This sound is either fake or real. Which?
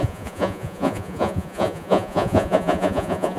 fake